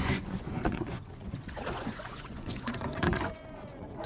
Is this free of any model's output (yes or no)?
no